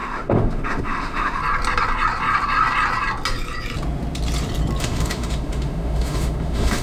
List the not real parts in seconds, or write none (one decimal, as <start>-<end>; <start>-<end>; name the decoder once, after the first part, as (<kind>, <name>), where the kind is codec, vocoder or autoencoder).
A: 0.0-1.4 (autoencoder, DAC-VAE); 4.8-6.8